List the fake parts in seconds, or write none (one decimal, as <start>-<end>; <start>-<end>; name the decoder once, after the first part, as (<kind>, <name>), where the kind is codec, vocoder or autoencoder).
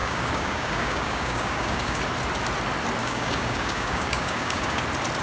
0.0-2.0 (codec, DAC); 3.0-4.8